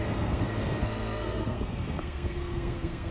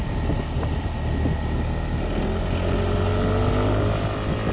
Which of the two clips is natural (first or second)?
second